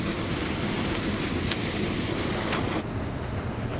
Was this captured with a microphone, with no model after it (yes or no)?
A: yes